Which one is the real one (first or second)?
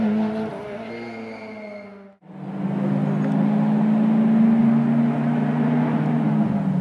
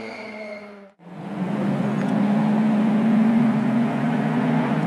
first